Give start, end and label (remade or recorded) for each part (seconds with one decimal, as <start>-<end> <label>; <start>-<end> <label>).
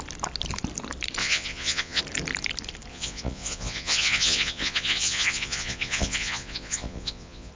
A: 0.0-1.2 recorded; 1.2-2.0 remade; 2.0-2.9 recorded; 2.9-7.5 remade